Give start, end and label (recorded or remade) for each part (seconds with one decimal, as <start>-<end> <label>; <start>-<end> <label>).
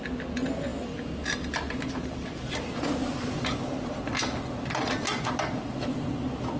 0.0-6.6 recorded